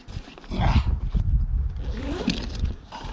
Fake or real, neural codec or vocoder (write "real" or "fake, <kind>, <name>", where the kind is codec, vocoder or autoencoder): real